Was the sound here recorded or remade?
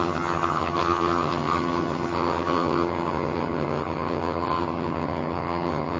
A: remade